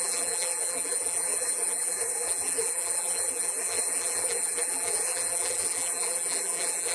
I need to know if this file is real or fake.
fake